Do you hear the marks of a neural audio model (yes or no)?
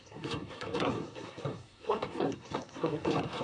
yes